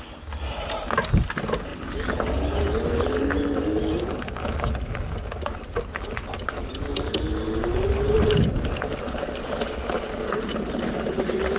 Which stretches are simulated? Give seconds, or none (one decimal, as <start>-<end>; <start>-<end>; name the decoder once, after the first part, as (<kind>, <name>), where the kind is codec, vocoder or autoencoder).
3.8-4.7 (codec, DAC)